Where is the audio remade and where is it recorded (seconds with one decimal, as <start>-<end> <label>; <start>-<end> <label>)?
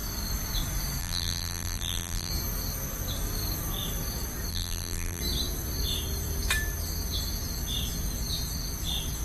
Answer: 0.0-1.0 recorded; 1.0-2.3 remade; 2.3-4.5 recorded; 4.5-5.2 remade; 5.2-9.2 recorded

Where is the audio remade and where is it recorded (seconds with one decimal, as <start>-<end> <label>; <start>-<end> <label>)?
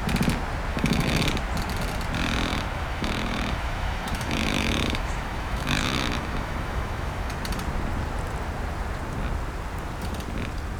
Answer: 0.0-0.7 recorded; 0.7-1.2 remade; 1.2-2.5 recorded; 2.5-7.3 remade; 7.3-10.8 recorded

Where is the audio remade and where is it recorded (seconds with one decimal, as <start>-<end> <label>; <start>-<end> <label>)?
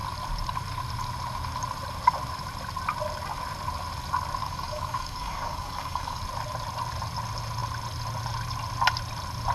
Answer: 0.0-4.4 recorded; 4.4-6.2 remade; 6.2-9.5 recorded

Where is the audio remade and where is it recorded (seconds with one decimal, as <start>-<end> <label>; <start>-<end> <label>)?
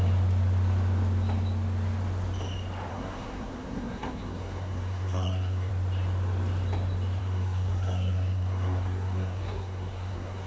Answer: 0.0-2.9 recorded; 2.9-5.7 remade; 5.7-7.2 recorded; 7.2-10.5 remade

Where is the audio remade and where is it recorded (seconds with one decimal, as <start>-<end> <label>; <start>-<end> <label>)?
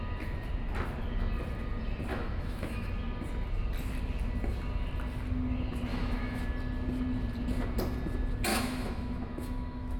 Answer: 0.0-2.1 recorded; 2.1-2.9 remade; 2.9-5.9 recorded; 5.9-6.4 remade; 6.4-8.5 recorded; 8.5-10.0 remade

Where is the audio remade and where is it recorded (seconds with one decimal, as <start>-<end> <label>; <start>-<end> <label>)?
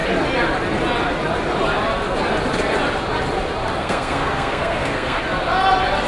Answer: 0.0-3.8 recorded; 3.8-5.2 remade; 5.2-6.1 recorded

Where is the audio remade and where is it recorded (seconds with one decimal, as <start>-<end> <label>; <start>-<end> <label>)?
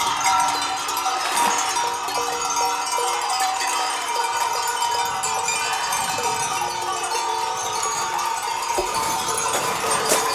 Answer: 0.0-1.2 remade; 1.2-3.3 recorded; 3.3-4.7 remade; 4.7-5.4 recorded; 5.4-6.3 remade; 6.3-7.0 recorded; 7.0-10.3 remade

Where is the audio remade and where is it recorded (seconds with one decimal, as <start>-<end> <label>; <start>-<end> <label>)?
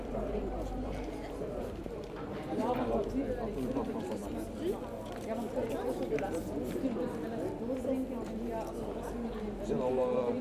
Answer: 0.0-4.2 remade; 4.2-9.1 recorded; 9.1-10.4 remade